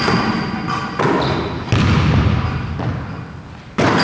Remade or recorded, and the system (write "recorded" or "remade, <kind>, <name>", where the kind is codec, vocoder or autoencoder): recorded